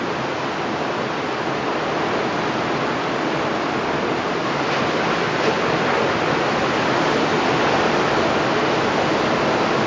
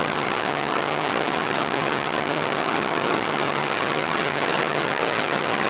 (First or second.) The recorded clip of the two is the first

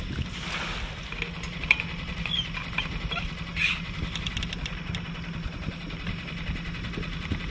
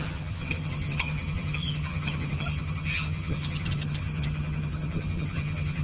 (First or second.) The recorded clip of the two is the first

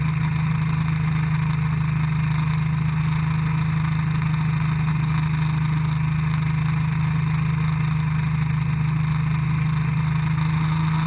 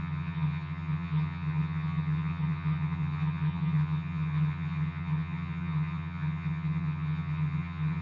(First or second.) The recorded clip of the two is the first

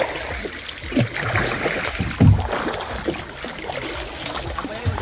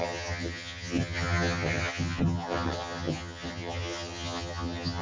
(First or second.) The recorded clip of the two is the first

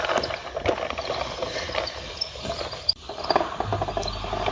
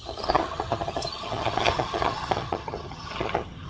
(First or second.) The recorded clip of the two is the first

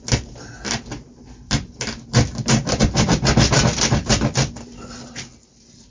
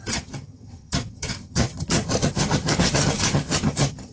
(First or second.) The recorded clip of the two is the first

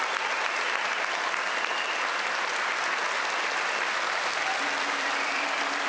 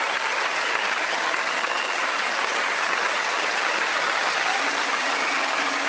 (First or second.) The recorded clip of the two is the first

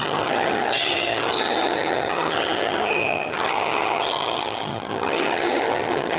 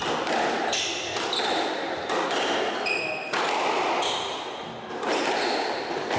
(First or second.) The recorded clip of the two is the second